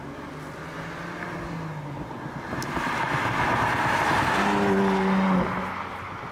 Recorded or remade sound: recorded